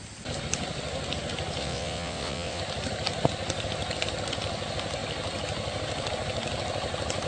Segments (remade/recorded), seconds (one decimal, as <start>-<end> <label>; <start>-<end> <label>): 0.0-1.6 recorded; 1.6-2.6 remade; 2.6-7.3 recorded